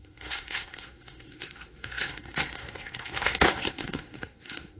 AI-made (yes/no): yes